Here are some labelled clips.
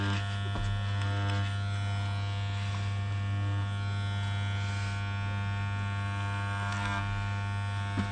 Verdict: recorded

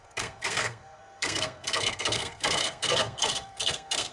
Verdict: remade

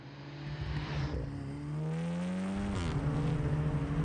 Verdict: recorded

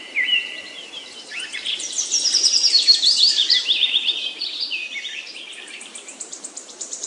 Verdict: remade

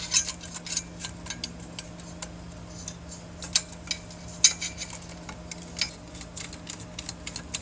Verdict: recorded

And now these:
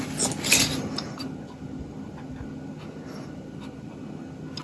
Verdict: recorded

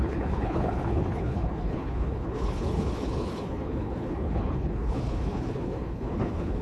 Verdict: remade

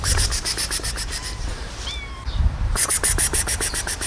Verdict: remade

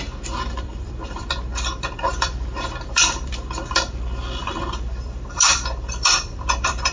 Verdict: remade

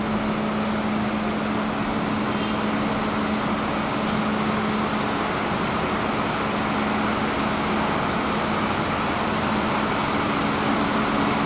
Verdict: recorded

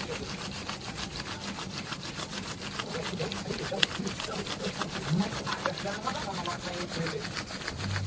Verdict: recorded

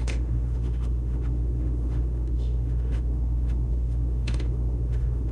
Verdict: remade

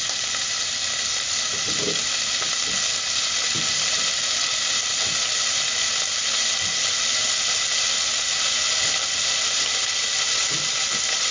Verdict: recorded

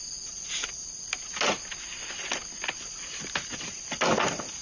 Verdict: recorded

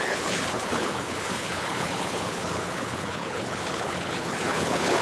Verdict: remade